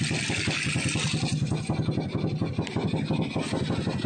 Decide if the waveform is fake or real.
real